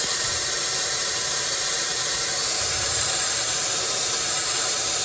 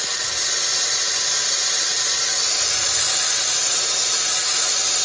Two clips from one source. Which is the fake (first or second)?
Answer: first